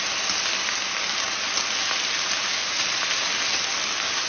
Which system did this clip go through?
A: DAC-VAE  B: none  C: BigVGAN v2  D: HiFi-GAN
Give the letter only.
B